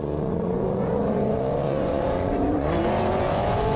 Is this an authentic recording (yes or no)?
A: no